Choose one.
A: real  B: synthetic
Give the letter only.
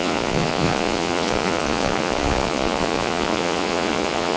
B